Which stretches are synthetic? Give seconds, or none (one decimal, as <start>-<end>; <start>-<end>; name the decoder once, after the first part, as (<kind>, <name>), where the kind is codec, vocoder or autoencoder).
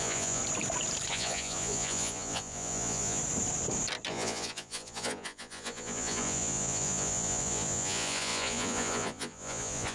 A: 0.0-0.4 (vocoder, Vocos); 1.1-3.2; 4.1-9.9